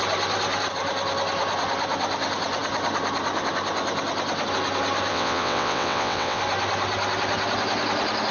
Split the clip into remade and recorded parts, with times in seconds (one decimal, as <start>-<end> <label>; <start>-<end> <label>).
0.0-5.1 recorded; 5.1-6.4 remade; 6.4-8.3 recorded